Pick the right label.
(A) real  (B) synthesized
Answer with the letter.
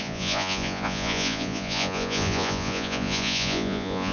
B